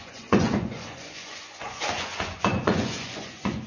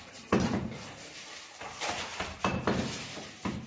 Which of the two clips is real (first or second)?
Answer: second